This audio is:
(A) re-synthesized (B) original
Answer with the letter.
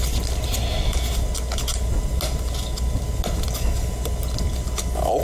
B